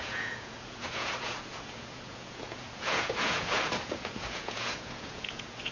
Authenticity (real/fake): fake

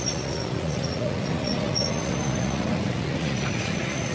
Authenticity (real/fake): fake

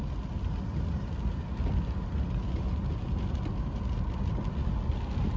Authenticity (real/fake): real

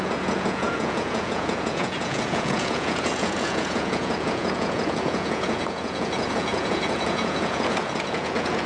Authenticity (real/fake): fake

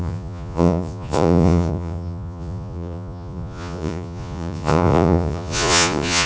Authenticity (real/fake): fake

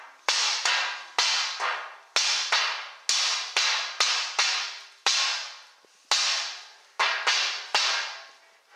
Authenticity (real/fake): real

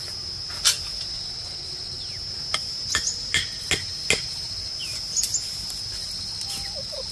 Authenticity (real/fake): real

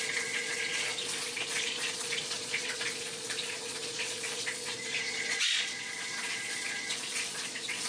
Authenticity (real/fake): fake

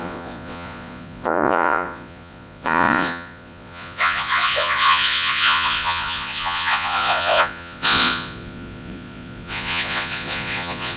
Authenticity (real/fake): fake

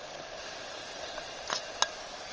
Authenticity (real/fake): real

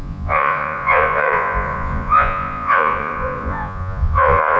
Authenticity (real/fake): fake